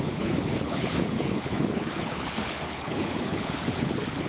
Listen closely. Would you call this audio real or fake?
fake